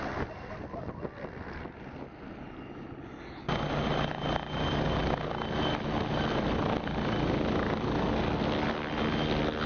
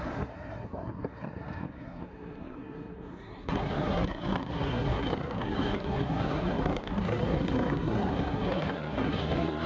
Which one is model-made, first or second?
second